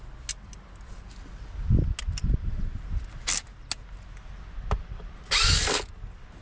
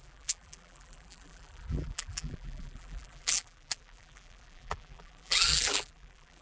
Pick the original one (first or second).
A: first